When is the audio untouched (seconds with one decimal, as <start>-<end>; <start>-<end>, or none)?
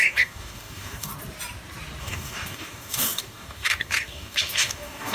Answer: 1.1-2.0